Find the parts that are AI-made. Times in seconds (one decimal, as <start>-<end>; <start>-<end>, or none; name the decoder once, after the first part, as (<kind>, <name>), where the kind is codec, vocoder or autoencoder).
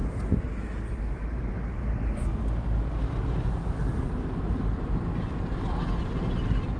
0.9-2.3 (vocoder, BigVGAN v2)